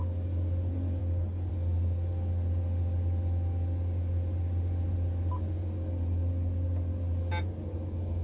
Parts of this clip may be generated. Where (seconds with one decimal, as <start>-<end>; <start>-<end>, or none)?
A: 1.0-1.5